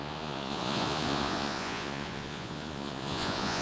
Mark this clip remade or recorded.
remade